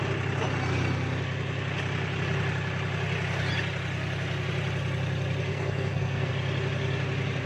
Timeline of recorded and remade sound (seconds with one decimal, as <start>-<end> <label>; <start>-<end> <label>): 0.0-5.5 recorded; 5.5-6.3 remade; 6.3-7.5 recorded